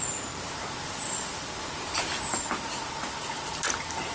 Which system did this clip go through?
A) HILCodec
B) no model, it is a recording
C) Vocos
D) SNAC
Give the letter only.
B